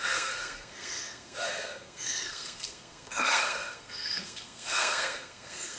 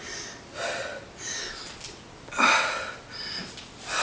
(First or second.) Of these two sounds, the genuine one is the second